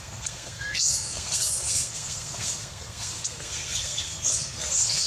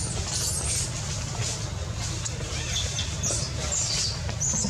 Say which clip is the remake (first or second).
first